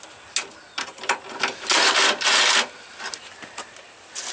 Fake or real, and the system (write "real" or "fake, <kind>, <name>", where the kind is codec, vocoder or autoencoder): real